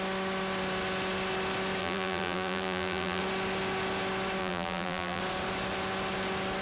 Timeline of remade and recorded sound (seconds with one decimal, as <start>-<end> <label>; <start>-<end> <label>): 0.0-1.8 recorded; 1.8-3.2 remade; 3.2-4.4 recorded; 4.4-5.2 remade; 5.2-6.6 recorded